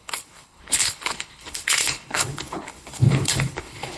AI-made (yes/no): yes